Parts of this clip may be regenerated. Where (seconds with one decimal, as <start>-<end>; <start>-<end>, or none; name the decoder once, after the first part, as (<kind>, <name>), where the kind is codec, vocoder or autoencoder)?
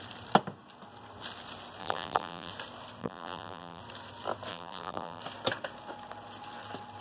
1.8-2.5 (vocoder, BigVGAN v2); 3.0-3.8; 4.5-5.2